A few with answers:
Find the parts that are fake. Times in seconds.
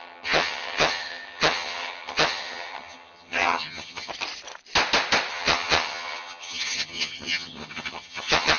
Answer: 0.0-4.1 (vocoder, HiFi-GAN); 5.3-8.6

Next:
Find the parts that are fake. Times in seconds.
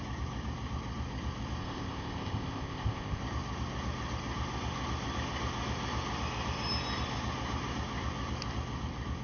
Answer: 1.6-3.2 (codec, ZipCodec)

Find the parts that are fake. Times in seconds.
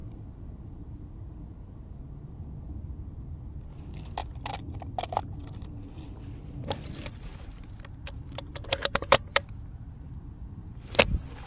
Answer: 0.0-2.2 (vocoder, BigVGAN v2); 4.2-5.2; 7.3-11.0